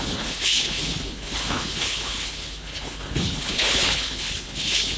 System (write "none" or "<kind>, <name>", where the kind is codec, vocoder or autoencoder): codec, HILCodec